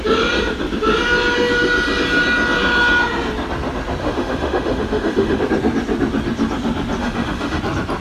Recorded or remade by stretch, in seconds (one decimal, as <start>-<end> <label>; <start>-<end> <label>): 0.0-4.0 recorded; 4.0-5.4 remade; 5.4-7.0 recorded; 7.0-7.6 remade; 7.6-8.0 recorded